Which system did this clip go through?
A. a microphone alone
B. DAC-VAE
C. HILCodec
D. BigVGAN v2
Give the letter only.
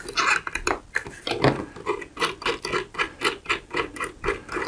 A